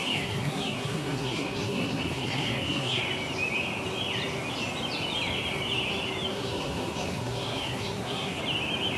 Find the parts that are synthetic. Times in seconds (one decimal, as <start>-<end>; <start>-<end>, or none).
0.0-3.0; 6.3-8.4

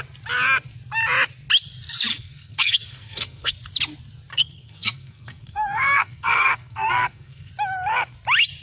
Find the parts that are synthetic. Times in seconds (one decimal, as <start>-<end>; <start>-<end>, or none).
2.1-3.5; 4.3-7.5